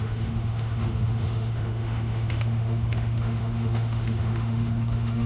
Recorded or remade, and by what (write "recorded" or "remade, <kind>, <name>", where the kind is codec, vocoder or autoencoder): remade, autoencoder, DAC-VAE